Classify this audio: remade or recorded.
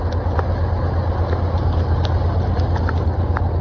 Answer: recorded